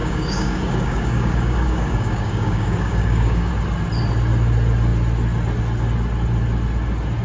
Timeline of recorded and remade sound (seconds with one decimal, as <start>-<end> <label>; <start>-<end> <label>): 0.0-3.5 remade; 3.5-7.2 recorded